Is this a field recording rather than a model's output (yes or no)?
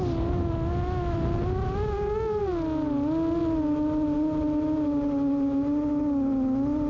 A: yes